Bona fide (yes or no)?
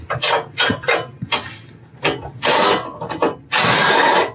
yes